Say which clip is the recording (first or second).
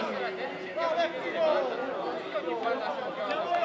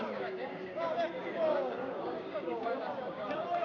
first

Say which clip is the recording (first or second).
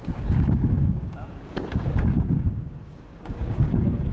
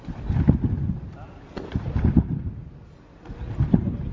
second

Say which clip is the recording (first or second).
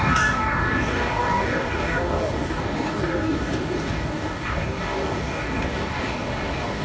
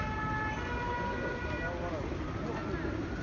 second